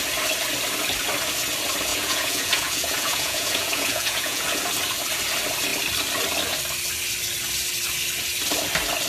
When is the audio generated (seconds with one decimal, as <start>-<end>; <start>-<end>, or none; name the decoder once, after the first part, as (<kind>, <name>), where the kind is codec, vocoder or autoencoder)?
1.9-4.6 (vocoder, Vocos)